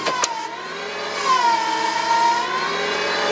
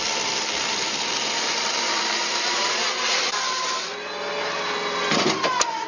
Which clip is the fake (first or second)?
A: second